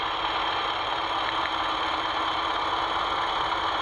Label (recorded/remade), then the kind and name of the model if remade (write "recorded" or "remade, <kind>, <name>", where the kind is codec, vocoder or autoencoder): recorded